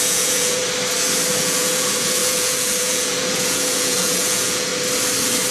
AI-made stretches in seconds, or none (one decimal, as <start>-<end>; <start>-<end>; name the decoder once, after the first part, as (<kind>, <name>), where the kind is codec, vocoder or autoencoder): 0.0-0.6 (vocoder, Vocos); 1.3-4.7